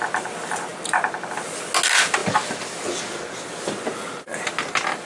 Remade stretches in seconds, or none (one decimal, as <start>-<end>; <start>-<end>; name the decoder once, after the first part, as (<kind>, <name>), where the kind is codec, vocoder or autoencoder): none